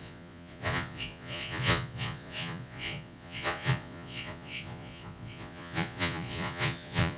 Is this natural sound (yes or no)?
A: no